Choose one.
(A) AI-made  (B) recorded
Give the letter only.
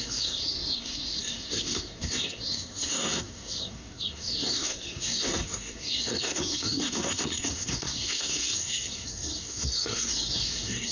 A